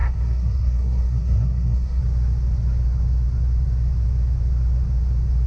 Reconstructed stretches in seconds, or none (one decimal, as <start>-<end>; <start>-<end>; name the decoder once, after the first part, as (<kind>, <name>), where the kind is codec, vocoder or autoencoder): 0.0-2.0 (codec, SNAC)